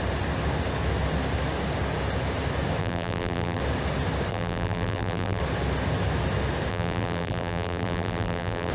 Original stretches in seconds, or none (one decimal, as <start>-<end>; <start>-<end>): 0.0-2.8; 3.6-4.3; 5.4-6.7